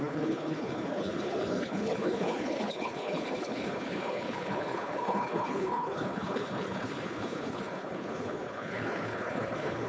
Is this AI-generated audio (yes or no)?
yes